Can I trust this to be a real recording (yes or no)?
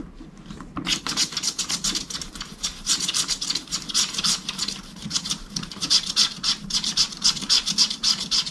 no